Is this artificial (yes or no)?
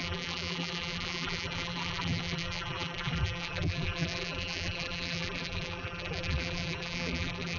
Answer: yes